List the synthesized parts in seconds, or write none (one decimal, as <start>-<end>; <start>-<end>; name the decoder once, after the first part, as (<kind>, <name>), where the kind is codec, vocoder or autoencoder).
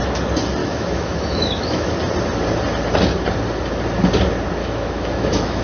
0.6-1.9 (autoencoder, DAC-VAE); 4.6-5.6